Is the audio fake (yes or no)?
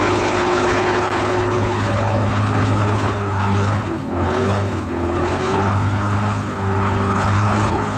yes